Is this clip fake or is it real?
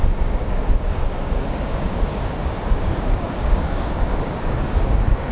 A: fake